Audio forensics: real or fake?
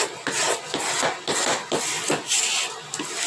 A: real